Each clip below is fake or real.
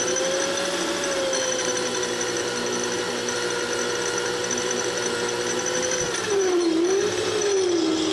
real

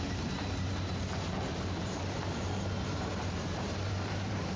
fake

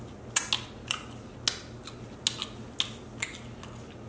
real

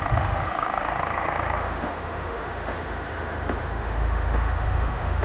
fake